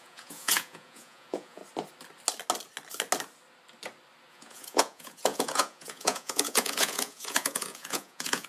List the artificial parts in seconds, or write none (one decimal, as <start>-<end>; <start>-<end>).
0.0-1.6; 4.3-8.5